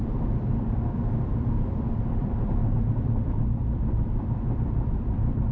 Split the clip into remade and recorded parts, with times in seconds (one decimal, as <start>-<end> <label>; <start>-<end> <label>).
0.0-5.5 remade

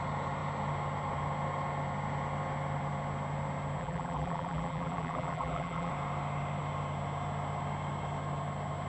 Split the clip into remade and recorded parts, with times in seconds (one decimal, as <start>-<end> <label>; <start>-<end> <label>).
0.0-3.8 recorded; 3.8-5.9 remade; 5.9-8.9 recorded

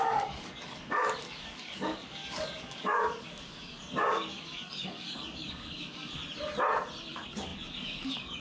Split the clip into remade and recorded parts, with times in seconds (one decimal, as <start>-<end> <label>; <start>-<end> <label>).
0.0-6.2 remade; 6.2-7.1 recorded; 7.1-8.4 remade

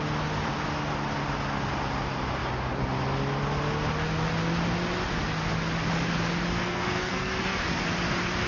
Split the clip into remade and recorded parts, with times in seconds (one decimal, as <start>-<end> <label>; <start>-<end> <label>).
0.0-6.6 recorded; 6.6-7.8 remade; 7.8-8.5 recorded

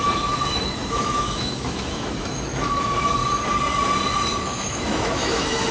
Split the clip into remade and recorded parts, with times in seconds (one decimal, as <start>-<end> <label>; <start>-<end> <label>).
0.0-3.2 remade; 3.2-4.4 recorded; 4.4-5.7 remade

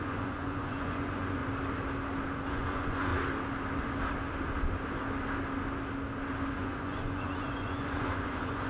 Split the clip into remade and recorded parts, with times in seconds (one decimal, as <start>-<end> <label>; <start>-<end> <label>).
0.0-1.4 remade; 1.4-2.5 recorded; 2.5-3.1 remade; 3.1-6.5 recorded; 6.5-8.7 remade

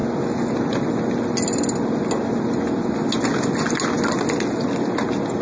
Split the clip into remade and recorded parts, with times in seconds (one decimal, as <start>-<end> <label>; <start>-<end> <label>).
0.0-5.4 recorded